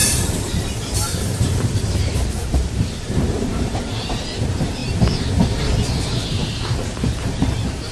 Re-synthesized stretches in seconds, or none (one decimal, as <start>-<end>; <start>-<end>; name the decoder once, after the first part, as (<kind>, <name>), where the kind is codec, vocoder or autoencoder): 0.0-3.8 (vocoder, BigVGAN v2); 6.4-7.3